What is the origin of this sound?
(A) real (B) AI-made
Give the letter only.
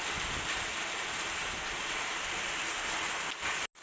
A